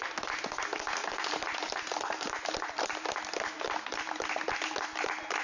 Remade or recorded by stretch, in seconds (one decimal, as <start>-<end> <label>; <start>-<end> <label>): 0.0-1.0 recorded; 1.0-2.9 remade; 2.9-5.4 recorded